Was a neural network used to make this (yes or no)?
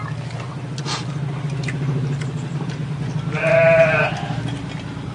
no